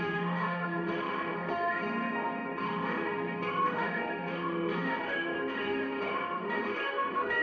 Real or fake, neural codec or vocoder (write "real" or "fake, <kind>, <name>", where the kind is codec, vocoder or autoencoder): fake, autoencoder, DAC-VAE